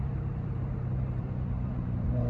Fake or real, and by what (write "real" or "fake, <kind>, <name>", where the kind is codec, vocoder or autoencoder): fake, vocoder, BigVGAN v2